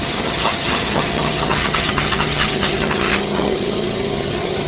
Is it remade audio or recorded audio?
remade